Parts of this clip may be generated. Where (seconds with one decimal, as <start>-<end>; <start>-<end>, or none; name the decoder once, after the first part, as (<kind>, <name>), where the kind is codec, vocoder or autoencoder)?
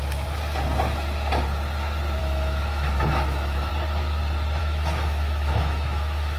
2.2-3.7 (autoencoder, DAC-VAE); 4.6-6.4